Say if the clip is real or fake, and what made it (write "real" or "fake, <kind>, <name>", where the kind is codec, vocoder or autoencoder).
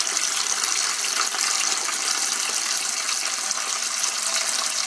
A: real